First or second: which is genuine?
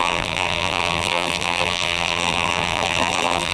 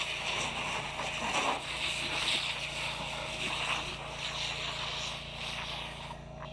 second